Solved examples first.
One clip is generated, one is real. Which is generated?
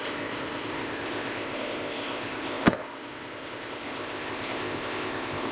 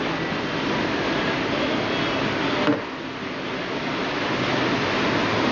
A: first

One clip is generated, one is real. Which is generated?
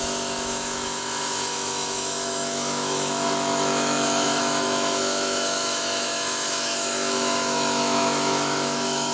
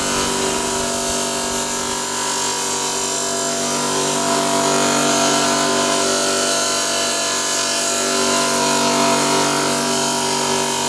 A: first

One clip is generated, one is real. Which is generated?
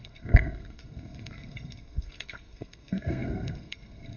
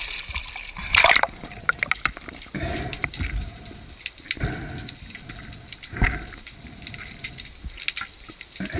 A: first